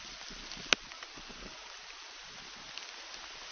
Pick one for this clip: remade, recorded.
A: recorded